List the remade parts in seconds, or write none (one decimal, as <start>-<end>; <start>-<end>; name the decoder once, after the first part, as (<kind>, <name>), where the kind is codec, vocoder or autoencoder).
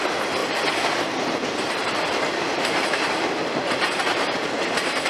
1.8-5.1 (vocoder, BigVGAN v2)